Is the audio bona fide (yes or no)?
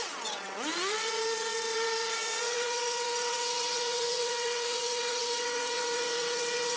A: no